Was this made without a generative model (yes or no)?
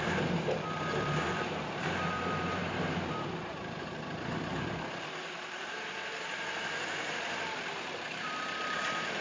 no